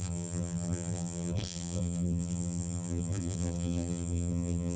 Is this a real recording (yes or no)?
no